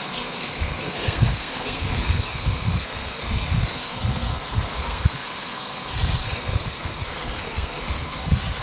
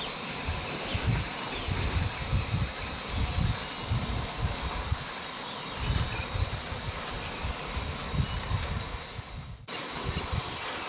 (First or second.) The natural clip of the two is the second